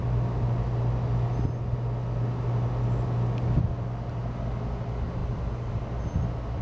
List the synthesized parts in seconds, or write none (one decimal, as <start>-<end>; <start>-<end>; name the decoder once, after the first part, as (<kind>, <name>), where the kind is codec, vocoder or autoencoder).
none

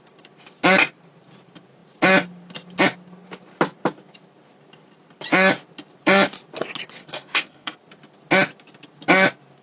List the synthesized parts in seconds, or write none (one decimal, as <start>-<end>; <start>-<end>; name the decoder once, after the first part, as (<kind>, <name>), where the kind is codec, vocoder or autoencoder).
7.0-7.7 (codec, SNAC)